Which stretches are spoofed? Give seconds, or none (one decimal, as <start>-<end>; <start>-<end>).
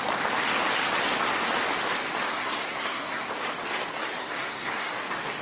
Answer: 2.3-3.3; 4.2-4.9